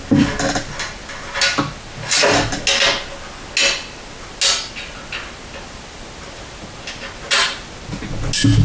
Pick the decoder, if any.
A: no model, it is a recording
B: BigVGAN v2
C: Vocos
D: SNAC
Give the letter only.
A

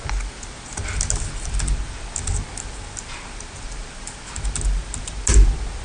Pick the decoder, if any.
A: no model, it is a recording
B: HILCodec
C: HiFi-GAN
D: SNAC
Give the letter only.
A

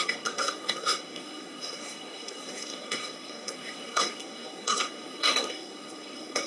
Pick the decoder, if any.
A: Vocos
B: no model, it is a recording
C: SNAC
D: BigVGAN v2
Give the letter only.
C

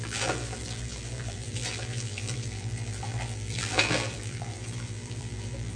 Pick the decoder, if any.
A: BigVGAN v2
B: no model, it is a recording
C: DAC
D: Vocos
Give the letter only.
A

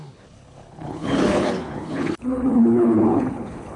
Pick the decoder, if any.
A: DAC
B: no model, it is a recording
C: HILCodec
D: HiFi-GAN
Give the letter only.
C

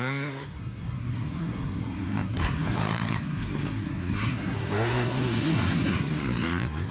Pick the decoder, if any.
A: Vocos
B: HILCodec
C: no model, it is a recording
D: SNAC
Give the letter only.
D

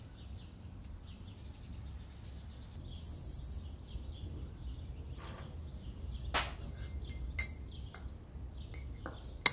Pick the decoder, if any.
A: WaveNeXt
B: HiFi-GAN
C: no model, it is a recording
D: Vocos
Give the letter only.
C